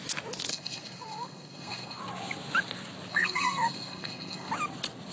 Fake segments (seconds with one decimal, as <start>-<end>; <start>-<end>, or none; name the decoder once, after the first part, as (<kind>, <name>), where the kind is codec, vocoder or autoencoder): 0.5-2.0 (codec, SNAC); 3.1-4.5